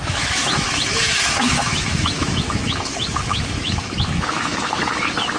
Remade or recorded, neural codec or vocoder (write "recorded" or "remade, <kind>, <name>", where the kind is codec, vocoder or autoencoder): remade, autoencoder, DAC-VAE